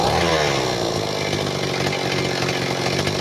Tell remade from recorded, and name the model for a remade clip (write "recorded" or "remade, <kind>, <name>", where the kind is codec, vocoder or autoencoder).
recorded